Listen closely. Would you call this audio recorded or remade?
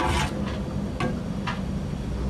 recorded